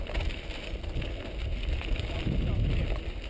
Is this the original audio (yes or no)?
yes